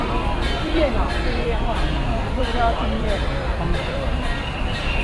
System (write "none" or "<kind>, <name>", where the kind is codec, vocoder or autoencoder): vocoder, BigVGAN v2